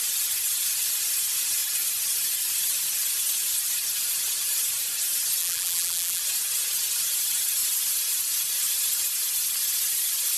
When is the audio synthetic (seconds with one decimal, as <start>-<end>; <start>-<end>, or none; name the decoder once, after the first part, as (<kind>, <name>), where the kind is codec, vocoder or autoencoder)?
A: 5.4-6.2 (vocoder, BigVGAN v2)